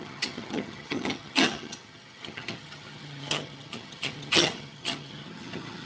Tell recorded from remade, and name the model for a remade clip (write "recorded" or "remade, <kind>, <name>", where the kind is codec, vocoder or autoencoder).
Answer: remade, vocoder, HiFi-GAN